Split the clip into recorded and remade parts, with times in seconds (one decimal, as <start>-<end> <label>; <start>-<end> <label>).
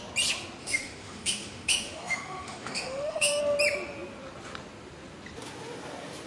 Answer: 0.0-0.6 recorded; 0.6-3.4 remade; 3.4-6.3 recorded